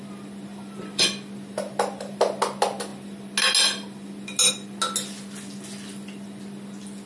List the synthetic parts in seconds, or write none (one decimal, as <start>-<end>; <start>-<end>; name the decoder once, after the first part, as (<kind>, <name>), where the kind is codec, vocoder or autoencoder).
none